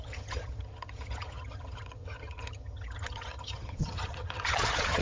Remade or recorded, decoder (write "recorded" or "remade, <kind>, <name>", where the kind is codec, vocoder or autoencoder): remade, vocoder, HiFi-GAN